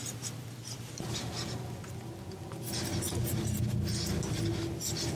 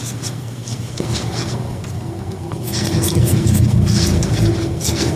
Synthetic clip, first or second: second